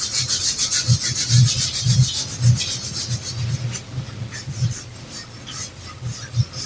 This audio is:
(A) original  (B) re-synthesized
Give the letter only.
A